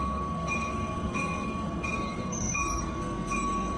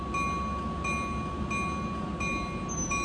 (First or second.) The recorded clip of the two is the second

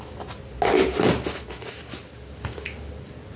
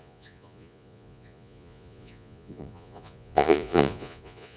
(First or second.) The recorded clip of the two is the first